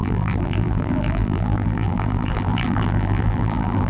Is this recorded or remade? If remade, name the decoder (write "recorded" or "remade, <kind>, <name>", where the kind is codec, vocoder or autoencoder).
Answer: remade, vocoder, BigVGAN v2